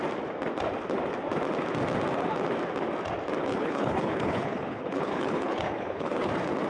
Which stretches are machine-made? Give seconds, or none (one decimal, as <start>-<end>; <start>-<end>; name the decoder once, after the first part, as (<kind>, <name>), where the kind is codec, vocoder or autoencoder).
3.5-6.3 (codec, HILCodec)